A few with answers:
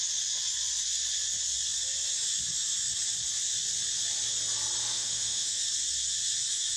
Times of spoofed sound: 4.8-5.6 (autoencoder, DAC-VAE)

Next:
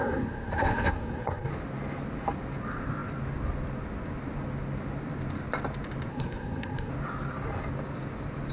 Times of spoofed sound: 0.0-1.5 (codec, SNAC); 6.1-6.9

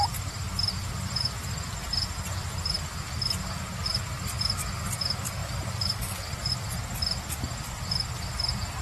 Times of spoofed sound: 0.8-1.6 (vocoder, BigVGAN v2); 5.4-6.5